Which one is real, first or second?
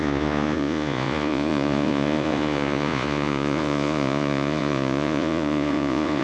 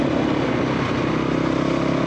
second